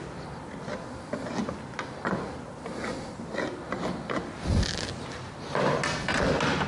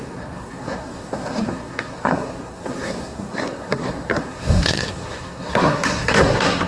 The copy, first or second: second